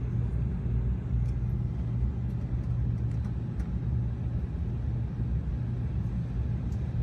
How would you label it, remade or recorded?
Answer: recorded